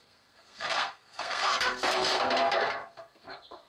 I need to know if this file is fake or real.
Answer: fake